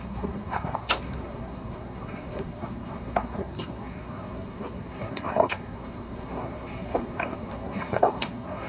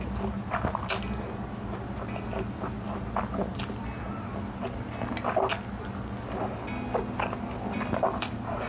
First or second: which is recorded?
second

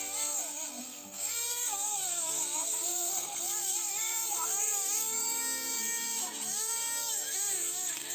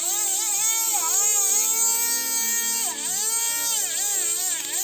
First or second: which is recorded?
second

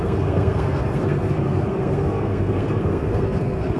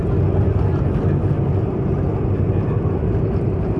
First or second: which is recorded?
second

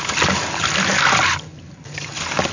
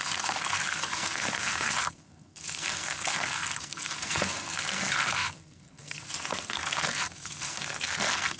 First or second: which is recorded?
first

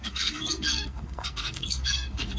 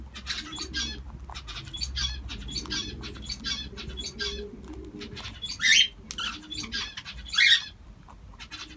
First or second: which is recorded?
second